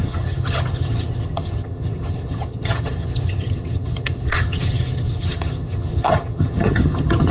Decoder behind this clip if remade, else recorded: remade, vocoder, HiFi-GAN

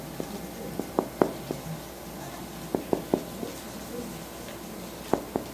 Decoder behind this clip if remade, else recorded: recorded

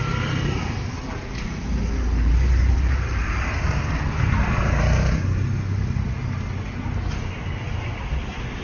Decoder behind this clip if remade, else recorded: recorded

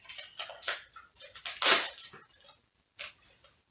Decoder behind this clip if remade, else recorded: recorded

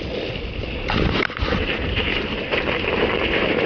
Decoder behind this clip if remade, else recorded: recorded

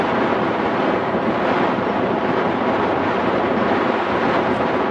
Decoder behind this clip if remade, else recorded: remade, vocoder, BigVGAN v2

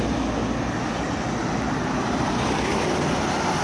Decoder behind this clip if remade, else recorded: recorded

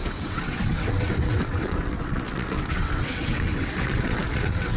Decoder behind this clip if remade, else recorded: remade, vocoder, WaveNeXt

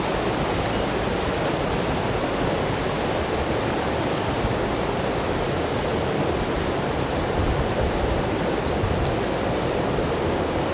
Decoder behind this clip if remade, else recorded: recorded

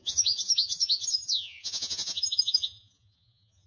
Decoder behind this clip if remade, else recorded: remade, vocoder, Vocos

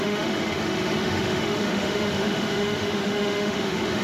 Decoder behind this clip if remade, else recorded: remade, autoencoder, DAC-VAE